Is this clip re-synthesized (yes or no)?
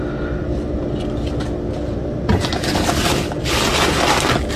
no